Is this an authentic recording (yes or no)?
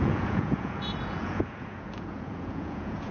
no